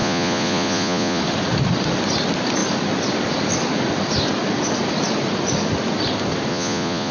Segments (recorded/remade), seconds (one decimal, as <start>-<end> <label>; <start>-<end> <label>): 0.0-1.2 remade; 1.2-6.5 recorded; 6.5-7.1 remade